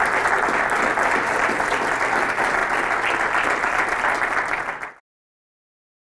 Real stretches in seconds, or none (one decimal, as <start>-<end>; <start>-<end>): 0.0-6.1